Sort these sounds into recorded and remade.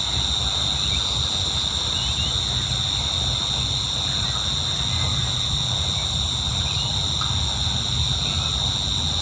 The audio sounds recorded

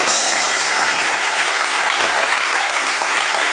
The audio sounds remade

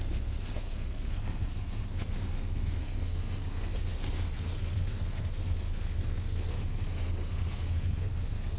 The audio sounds remade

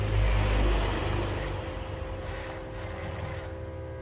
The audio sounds recorded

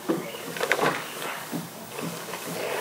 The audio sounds remade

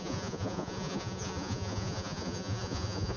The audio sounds remade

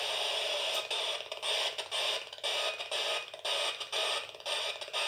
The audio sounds recorded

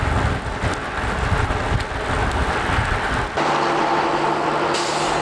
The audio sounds recorded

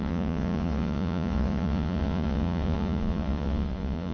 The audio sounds remade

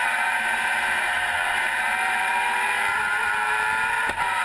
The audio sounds remade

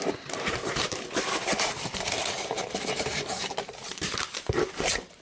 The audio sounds remade